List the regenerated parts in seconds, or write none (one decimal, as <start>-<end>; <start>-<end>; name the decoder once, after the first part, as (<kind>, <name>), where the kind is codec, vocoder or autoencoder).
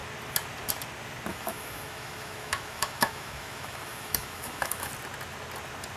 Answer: 1.3-4.9 (autoencoder, DAC-VAE)